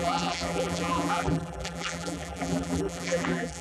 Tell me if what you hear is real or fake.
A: fake